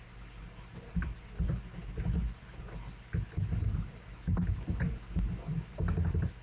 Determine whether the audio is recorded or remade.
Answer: recorded